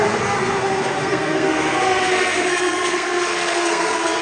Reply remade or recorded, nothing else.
remade